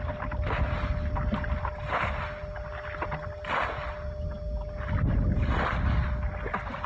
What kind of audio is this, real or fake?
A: real